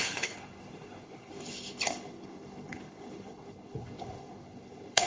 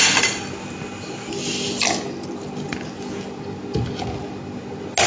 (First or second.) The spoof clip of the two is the first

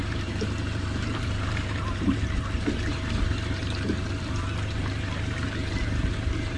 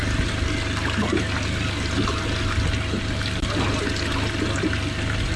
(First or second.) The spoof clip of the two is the first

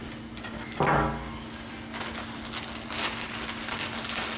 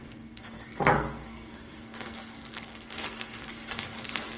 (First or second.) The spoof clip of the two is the second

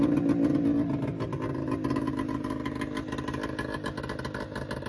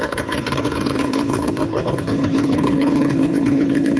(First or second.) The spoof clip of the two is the second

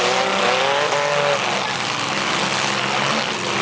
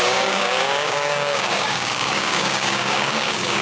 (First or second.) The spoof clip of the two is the second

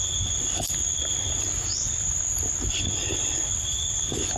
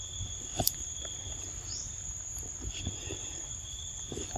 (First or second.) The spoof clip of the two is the second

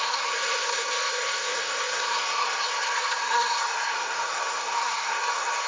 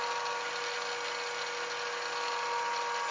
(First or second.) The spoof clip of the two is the first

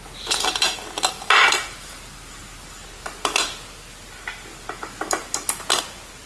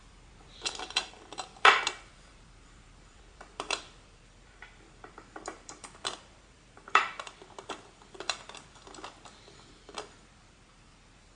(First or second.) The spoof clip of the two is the second